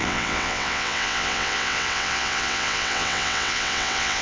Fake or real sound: fake